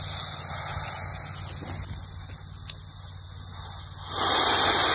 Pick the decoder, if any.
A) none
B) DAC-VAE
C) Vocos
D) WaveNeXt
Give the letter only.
A